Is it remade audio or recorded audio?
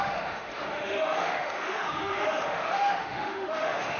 remade